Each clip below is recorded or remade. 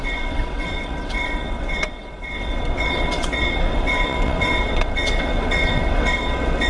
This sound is remade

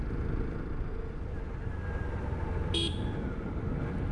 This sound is recorded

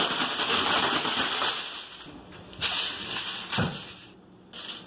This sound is recorded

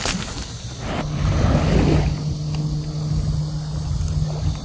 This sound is recorded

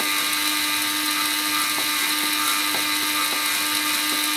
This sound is recorded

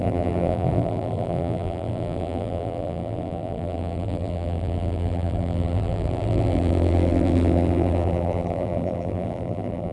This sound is remade